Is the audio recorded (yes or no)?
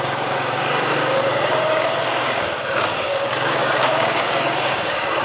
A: no